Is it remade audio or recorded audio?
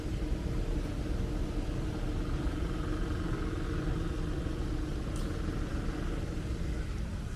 recorded